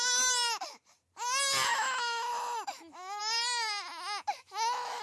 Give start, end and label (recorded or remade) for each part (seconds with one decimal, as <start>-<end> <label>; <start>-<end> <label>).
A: 0.0-1.7 recorded; 1.7-3.2 remade; 3.2-3.9 recorded; 3.9-5.0 remade